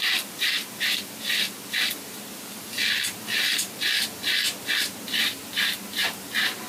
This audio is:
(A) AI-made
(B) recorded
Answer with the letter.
A